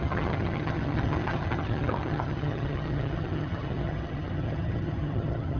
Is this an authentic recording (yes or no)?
no